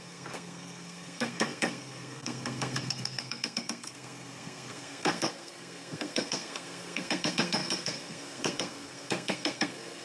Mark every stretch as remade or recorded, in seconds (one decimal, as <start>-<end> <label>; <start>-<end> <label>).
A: 0.0-10.0 remade